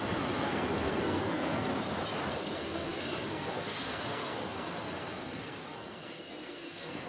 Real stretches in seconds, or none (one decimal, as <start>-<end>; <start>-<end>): 1.7-2.3